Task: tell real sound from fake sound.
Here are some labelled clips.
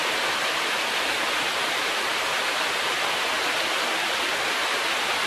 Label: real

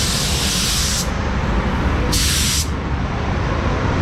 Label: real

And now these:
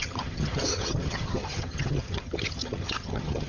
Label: fake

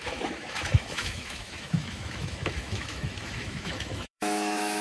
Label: fake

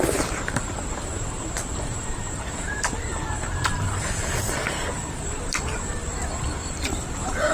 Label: fake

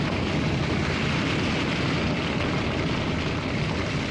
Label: real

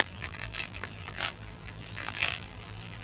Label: fake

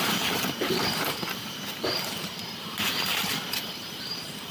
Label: fake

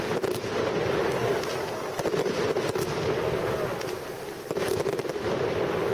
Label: real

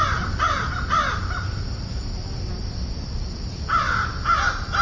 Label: real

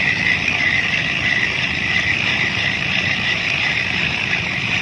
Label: real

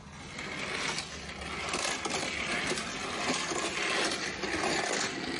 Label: real